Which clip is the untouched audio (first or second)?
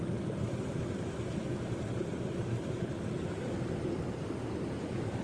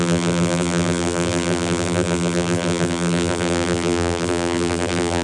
first